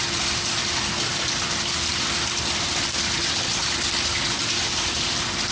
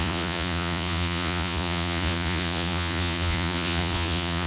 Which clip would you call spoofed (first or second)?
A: second